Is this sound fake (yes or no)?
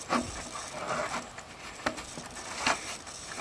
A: no